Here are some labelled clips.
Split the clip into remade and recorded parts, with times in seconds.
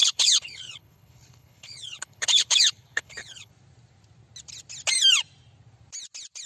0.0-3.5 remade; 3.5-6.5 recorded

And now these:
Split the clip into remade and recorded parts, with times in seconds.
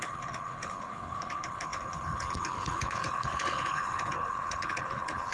0.0-5.3 remade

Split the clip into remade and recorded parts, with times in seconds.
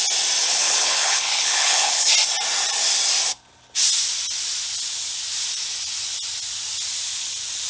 0.0-0.4 recorded; 0.4-2.1 remade; 2.1-7.7 recorded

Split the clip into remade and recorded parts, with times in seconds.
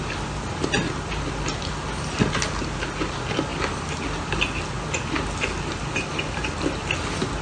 0.0-7.4 recorded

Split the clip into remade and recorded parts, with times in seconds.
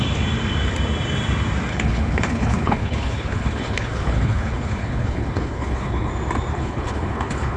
0.0-1.7 recorded; 1.7-6.1 remade; 6.1-6.5 recorded; 6.5-7.6 remade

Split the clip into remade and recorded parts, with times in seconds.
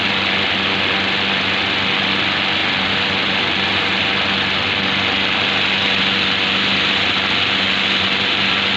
0.0-8.8 recorded